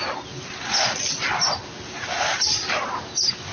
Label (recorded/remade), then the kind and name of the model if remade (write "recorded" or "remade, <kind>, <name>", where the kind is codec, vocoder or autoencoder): recorded